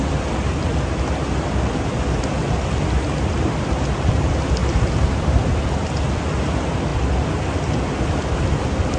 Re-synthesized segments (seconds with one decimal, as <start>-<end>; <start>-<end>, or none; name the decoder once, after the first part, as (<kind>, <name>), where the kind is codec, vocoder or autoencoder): none